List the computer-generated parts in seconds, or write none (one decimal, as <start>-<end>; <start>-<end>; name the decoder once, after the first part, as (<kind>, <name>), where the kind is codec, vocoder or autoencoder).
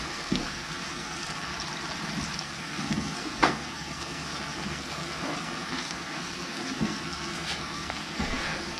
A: 0.0-1.5 (codec, SNAC); 2.4-8.8